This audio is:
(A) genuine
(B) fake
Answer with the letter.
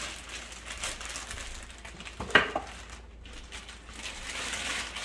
A